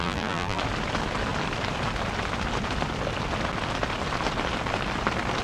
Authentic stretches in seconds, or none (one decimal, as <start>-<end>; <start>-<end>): 0.6-5.4